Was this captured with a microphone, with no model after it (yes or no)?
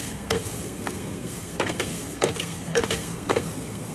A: no